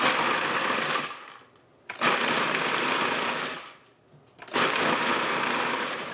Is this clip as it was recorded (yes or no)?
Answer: yes